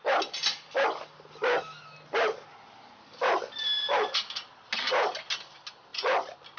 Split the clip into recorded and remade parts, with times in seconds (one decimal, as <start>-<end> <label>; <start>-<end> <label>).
0.0-6.6 recorded